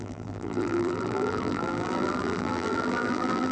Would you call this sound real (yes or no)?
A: no